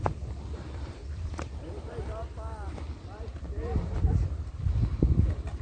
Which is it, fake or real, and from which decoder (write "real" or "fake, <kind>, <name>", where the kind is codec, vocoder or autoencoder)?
fake, vocoder, BigVGAN v2